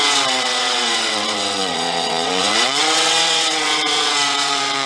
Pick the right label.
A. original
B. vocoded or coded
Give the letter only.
B